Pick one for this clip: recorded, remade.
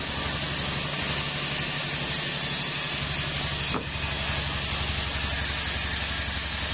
recorded